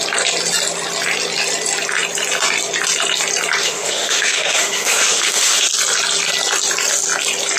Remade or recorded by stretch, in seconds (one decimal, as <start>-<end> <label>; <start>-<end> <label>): 0.0-3.6 recorded; 3.6-5.7 remade; 5.7-7.6 recorded